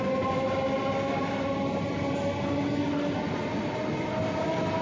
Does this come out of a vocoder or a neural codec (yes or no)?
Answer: no